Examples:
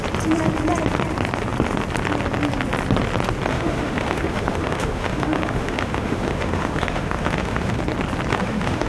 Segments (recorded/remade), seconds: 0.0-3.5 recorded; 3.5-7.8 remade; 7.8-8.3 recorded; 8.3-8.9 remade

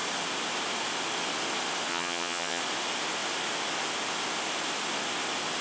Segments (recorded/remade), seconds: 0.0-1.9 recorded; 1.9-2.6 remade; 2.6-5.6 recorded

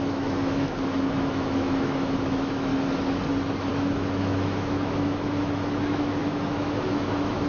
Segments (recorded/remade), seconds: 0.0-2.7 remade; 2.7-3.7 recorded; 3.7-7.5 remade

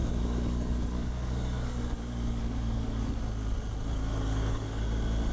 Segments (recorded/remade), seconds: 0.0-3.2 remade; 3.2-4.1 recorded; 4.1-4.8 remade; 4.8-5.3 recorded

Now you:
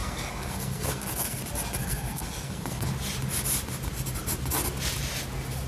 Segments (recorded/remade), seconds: 0.0-1.4 remade; 1.4-1.8 recorded; 1.8-2.9 remade; 2.9-5.7 recorded

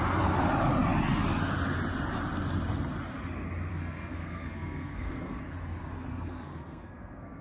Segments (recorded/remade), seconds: 0.0-3.7 recorded; 3.7-5.4 remade; 5.4-6.1 recorded; 6.1-7.4 remade

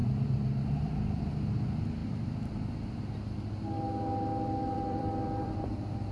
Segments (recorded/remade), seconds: 0.0-1.2 remade; 1.2-2.0 recorded; 2.0-6.1 remade

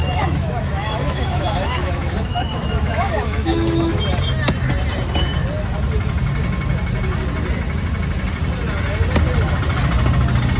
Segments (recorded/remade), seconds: 0.0-4.0 remade; 4.0-10.6 recorded